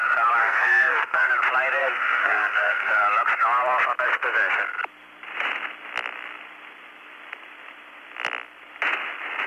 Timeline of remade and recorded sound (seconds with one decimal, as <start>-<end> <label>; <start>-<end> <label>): 0.0-0.4 recorded; 0.4-1.3 remade; 1.3-1.8 recorded; 1.8-2.9 remade; 2.9-9.5 recorded

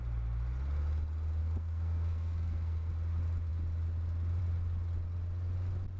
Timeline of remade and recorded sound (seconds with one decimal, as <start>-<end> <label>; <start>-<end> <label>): 0.0-1.4 recorded; 1.4-2.9 remade; 2.9-6.0 recorded